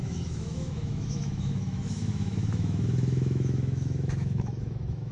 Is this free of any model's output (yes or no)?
no